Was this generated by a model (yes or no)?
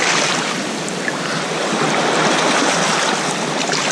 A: no